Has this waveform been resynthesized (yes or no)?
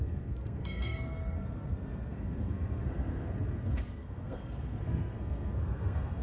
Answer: yes